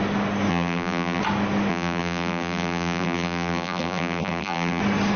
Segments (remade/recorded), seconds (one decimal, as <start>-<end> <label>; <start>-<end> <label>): 0.0-0.5 recorded; 0.5-1.2 remade; 1.2-1.7 recorded; 1.7-4.8 remade; 4.8-5.2 recorded